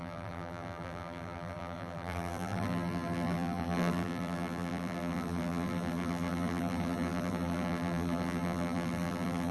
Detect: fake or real fake